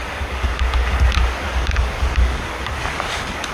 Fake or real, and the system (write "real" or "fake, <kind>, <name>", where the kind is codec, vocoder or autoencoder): fake, codec, DAC